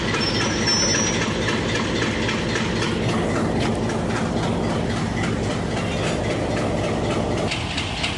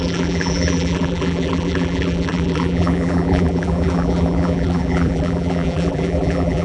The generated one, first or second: second